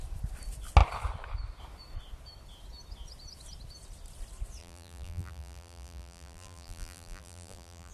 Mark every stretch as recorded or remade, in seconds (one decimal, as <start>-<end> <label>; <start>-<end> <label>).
0.0-4.6 recorded; 4.6-7.9 remade